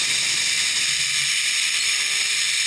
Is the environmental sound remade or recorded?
recorded